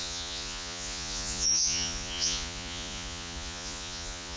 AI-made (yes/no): yes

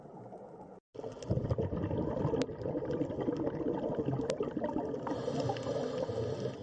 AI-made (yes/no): no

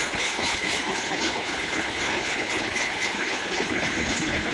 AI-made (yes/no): yes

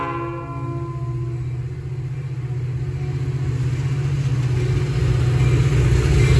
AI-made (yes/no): no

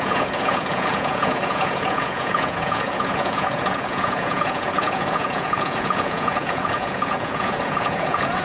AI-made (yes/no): yes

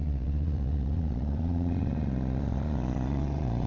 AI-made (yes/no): yes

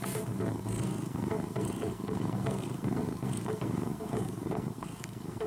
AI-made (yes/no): yes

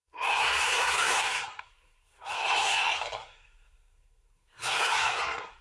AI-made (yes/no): yes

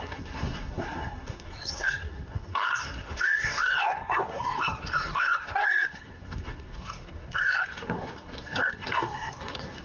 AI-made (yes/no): yes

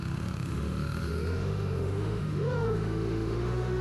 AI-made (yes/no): yes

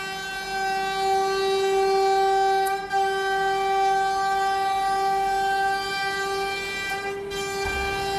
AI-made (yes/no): no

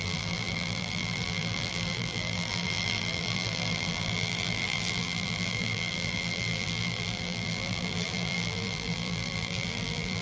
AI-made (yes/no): yes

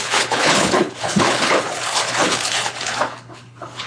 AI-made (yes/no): yes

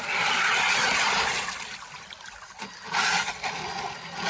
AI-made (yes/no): no